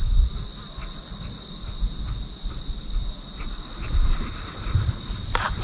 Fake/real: real